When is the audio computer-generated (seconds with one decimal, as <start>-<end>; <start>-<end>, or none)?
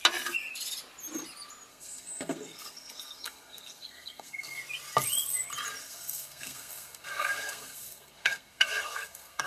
1.7-4.6; 5.8-9.5